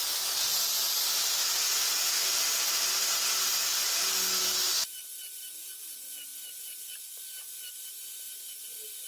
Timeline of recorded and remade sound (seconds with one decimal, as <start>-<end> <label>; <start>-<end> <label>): 0.0-9.1 recorded